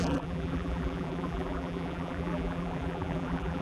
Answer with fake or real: fake